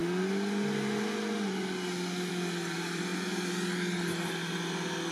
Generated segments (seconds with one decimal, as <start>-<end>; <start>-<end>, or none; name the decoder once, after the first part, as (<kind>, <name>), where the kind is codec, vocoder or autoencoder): 2.3-3.1 (vocoder, BigVGAN v2); 4.3-5.1